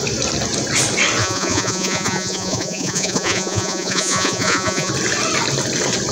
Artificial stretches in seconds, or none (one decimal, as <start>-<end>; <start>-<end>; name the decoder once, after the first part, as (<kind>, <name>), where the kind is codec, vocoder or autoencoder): 1.2-4.9 (vocoder, Vocos)